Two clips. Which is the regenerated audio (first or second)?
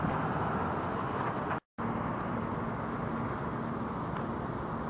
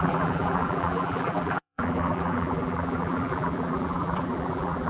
second